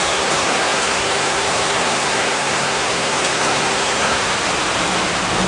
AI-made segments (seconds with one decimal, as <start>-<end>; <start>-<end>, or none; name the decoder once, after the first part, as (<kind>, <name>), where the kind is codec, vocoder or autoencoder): 0.0-4.3 (codec, SNAC)